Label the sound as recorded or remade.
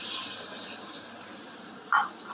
remade